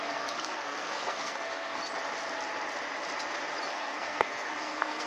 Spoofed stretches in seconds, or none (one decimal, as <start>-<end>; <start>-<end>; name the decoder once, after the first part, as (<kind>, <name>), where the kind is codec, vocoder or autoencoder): 0.0-1.8 (codec, SNAC); 3.7-5.1

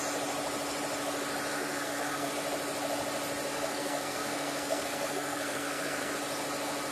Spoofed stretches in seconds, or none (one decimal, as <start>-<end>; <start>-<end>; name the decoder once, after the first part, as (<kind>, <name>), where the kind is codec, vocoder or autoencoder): 1.5-2.3 (codec, SNAC); 3.5-6.1

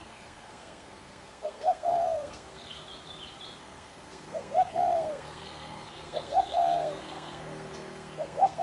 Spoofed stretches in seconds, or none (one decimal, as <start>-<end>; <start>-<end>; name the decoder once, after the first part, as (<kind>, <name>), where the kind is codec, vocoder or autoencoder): 0.0-2.8 (codec, SNAC); 3.6-8.6

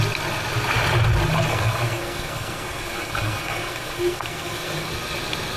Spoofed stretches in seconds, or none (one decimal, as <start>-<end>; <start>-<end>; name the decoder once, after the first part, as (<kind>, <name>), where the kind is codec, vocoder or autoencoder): 1.5-4.9 (codec, SNAC)

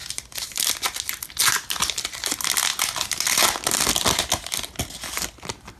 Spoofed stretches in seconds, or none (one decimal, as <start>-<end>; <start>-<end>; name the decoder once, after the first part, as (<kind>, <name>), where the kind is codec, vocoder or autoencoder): none